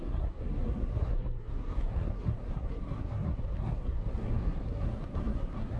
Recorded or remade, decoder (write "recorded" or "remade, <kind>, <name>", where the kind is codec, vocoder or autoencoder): remade, codec, SNAC